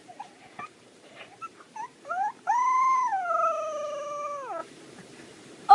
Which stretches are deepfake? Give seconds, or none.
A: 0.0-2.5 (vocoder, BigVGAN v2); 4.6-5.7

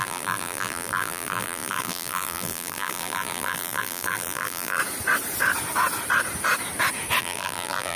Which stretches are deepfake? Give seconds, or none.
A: 0.0-4.8 (vocoder, BigVGAN v2); 7.2-8.0

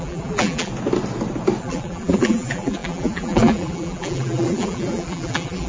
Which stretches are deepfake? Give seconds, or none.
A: 0.0-0.7 (vocoder, BigVGAN v2); 1.6-5.7

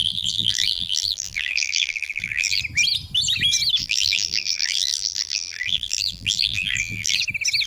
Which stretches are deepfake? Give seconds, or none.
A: 0.0-2.6 (vocoder, BigVGAN v2); 3.8-7.2

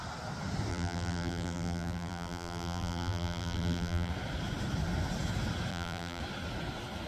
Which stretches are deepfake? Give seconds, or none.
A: 0.7-4.1 (vocoder, BigVGAN v2); 5.7-6.2

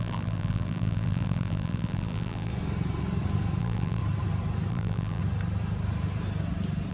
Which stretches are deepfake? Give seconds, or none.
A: 0.0-2.5 (vocoder, BigVGAN v2); 3.6-4.0; 4.7-5.2

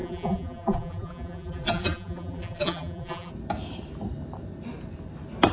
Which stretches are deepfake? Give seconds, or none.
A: 0.0-3.3 (vocoder, BigVGAN v2)